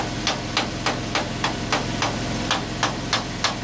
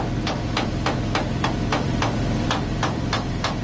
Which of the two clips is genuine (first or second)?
first